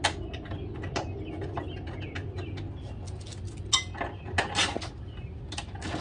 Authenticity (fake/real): real